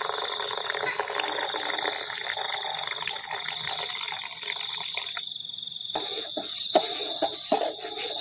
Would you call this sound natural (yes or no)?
yes